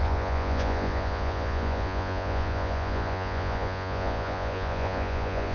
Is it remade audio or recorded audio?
remade